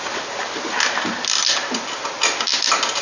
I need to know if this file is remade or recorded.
recorded